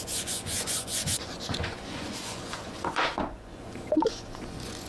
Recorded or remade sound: remade